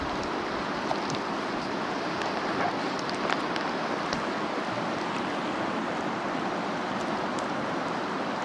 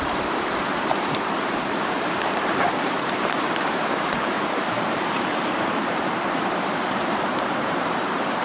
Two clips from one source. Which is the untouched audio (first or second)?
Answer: first